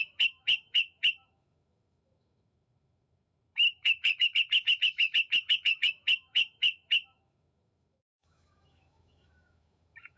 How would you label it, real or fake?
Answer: fake